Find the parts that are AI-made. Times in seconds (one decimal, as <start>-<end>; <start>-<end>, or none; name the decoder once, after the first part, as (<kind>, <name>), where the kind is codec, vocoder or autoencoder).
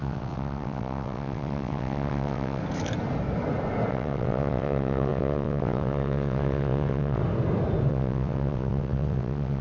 0.0-2.6 (vocoder, WaveNeXt); 3.9-7.2; 7.9-9.6